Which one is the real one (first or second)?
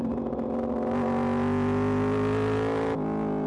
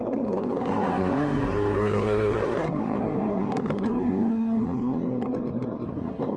first